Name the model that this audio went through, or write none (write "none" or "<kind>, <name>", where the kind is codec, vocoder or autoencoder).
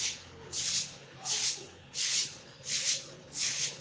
codec, HILCodec